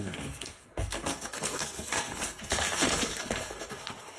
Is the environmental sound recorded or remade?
remade